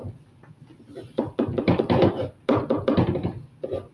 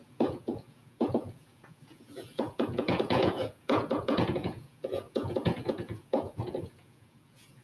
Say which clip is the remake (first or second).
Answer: second